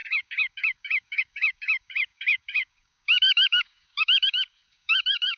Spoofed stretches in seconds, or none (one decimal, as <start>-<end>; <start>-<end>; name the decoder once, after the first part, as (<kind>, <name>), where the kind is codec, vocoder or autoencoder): 0.0-5.4 (codec, DAC)